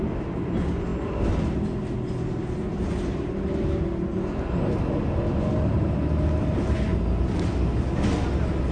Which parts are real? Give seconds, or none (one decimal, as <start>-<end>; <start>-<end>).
0.0-8.7